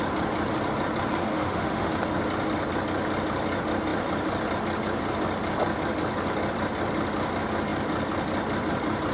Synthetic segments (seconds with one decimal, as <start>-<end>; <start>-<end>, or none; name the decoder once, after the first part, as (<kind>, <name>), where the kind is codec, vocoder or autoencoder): 1.3-1.9 (autoencoder, DAC-VAE)